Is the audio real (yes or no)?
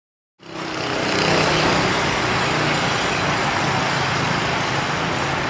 yes